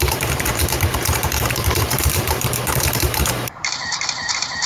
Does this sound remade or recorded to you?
remade